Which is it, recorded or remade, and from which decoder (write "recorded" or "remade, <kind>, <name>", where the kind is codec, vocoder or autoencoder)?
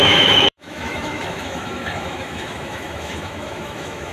remade, autoencoder, DAC-VAE